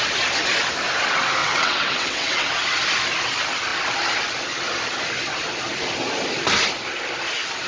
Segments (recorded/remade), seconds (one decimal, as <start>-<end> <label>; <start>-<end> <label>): 0.0-1.4 recorded; 1.4-2.6 remade; 2.6-7.7 recorded